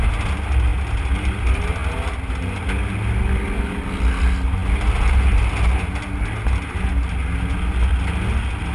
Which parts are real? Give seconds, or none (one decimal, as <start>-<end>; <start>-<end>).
0.0-8.7